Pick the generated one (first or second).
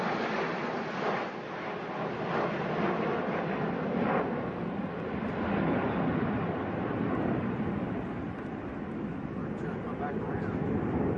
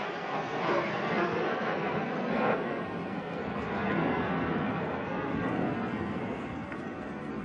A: second